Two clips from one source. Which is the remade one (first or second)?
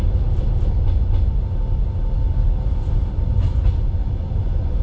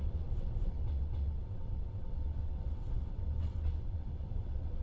second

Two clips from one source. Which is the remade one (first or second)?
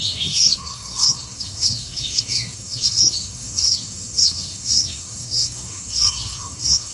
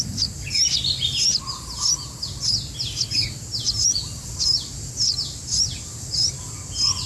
first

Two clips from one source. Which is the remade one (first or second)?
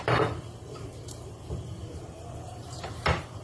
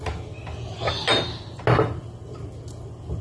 first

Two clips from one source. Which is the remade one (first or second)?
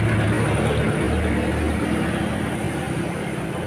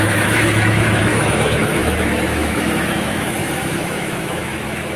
second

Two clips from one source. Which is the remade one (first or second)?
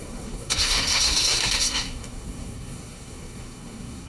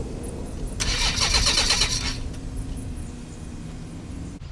first